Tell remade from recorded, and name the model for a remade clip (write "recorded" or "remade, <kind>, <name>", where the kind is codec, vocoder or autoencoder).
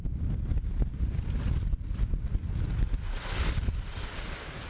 remade, vocoder, BigVGAN v2